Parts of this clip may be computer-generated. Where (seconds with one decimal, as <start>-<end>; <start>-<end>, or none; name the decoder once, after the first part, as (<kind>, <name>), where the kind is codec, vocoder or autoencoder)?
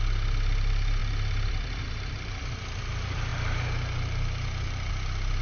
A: 1.0-2.4 (vocoder, BigVGAN v2); 3.3-4.9